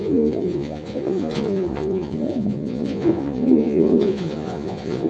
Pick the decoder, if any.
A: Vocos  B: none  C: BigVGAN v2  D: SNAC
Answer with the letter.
A